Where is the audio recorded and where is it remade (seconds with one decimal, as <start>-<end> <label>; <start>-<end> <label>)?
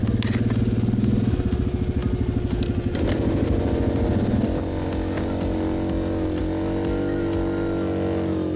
0.0-8.6 recorded